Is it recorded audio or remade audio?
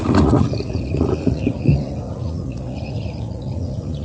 remade